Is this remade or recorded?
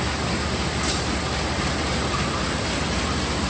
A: recorded